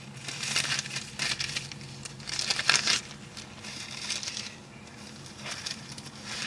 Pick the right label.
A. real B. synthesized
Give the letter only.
A